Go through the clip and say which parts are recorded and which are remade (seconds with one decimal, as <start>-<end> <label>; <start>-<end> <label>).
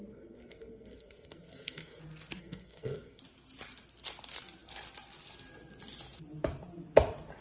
0.0-2.0 remade; 2.0-2.4 recorded; 2.4-3.2 remade; 3.2-7.4 recorded